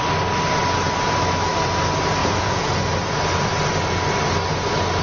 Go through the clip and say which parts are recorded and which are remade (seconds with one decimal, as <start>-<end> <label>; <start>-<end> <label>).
0.0-2.2 recorded; 2.2-2.7 remade; 2.7-5.0 recorded